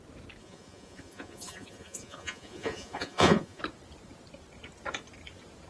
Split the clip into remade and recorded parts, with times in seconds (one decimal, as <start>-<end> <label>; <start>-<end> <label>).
0.0-0.4 recorded; 0.4-3.6 remade; 3.6-5.7 recorded